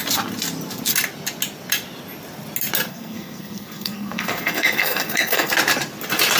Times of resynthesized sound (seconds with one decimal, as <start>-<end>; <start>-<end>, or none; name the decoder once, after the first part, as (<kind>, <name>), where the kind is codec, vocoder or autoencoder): 2.9-5.5 (codec, SNAC)